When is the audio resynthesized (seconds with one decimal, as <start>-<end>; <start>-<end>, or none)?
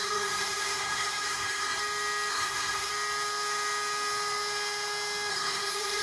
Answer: 0.0-1.8; 2.3-2.9; 5.3-6.0